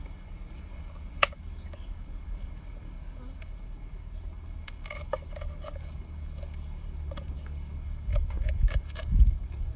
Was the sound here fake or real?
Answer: fake